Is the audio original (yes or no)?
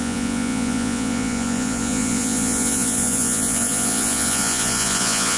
no